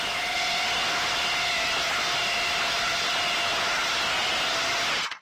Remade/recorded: recorded